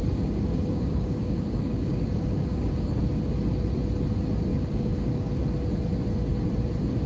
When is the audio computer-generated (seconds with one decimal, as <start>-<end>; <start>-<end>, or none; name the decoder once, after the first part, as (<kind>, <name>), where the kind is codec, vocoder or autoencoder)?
0.0-3.0 (codec, DAC); 4.5-5.3

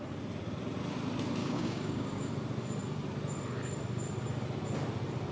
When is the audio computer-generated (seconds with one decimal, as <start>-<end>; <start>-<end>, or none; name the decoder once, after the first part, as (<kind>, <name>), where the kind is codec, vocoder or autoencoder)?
1.4-2.3 (codec, DAC)

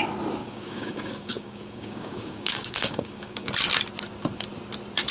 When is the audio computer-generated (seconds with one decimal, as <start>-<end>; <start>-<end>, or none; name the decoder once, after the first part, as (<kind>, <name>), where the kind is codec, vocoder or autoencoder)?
0.4-3.5 (codec, DAC)

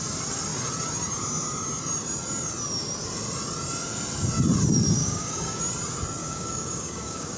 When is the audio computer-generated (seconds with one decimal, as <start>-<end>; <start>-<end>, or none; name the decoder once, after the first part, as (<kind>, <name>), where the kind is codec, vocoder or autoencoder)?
5.0-5.6 (codec, DAC); 6.2-7.4

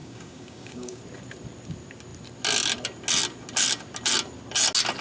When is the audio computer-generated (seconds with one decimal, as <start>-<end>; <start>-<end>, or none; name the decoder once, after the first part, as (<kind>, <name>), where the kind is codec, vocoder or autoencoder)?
0.0-1.0 (codec, DAC)

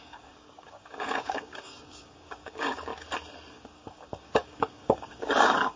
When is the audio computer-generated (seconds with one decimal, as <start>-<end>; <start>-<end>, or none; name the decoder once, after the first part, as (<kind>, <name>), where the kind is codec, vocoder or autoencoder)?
0.0-2.9 (codec, DAC); 3.5-5.8